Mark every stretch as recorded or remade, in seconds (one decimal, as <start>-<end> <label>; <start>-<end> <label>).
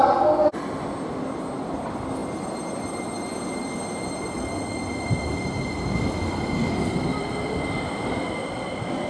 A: 0.0-9.1 recorded